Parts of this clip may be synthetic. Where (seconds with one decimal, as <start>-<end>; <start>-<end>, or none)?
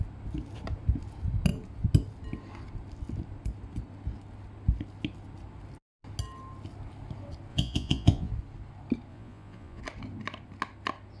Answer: 7.5-8.3; 9.1-9.8